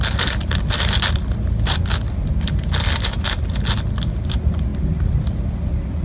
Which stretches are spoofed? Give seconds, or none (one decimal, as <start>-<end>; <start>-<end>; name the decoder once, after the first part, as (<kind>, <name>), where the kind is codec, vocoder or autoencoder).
none